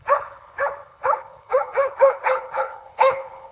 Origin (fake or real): fake